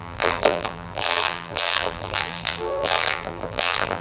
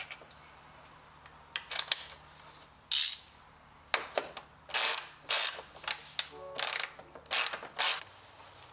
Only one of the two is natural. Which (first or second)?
second